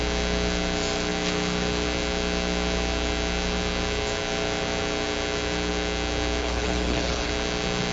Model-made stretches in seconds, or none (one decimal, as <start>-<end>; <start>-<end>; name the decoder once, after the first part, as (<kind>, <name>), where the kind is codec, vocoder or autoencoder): 6.4-7.3 (codec, HILCodec)